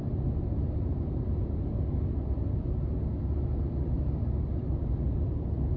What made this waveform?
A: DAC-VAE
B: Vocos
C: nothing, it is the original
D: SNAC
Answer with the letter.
C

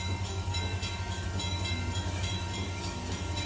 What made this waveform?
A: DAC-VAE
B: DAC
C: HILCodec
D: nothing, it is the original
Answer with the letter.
A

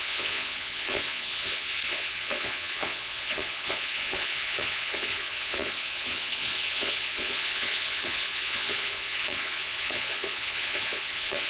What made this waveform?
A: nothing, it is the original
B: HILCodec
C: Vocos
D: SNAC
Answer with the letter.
C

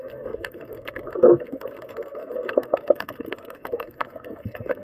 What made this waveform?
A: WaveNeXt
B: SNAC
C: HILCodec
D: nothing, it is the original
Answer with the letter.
B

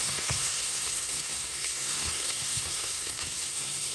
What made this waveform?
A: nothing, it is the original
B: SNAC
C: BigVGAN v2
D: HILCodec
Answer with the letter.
B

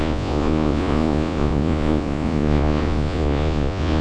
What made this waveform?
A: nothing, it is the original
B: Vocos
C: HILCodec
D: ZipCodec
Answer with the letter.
B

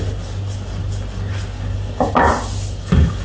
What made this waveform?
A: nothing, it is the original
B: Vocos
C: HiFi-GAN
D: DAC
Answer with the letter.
A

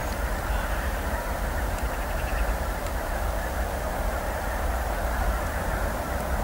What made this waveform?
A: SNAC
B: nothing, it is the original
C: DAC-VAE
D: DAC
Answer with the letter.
B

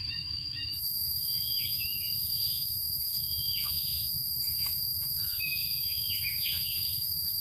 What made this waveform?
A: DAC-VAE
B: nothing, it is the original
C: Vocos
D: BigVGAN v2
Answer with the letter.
A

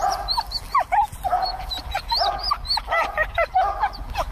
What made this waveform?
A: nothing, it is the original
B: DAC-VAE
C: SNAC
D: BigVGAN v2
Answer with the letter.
D